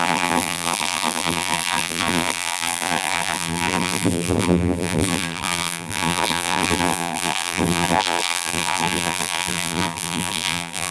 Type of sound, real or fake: fake